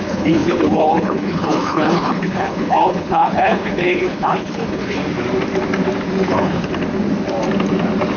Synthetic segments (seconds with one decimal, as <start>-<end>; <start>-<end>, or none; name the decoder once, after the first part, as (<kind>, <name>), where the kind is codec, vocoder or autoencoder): 0.0-5.0 (codec, HILCodec); 6.3-6.7